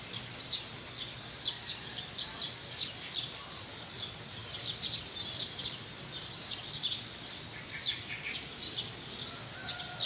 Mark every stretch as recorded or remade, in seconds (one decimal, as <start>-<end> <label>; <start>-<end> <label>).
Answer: 0.0-4.4 recorded; 4.4-7.9 remade; 7.9-10.1 recorded